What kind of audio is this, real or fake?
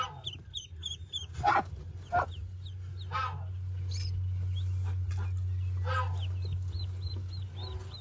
real